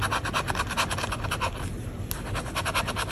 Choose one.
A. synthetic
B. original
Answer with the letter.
B